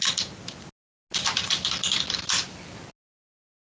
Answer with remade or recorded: recorded